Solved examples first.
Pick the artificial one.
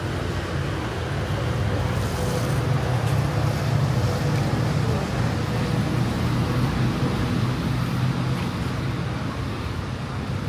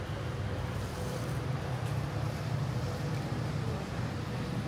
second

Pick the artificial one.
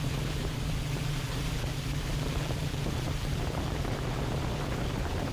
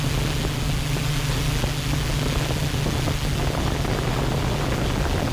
first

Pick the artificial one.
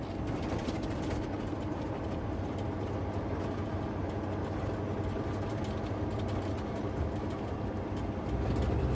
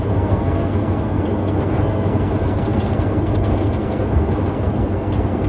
second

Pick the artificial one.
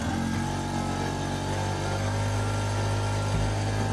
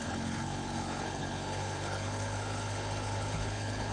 second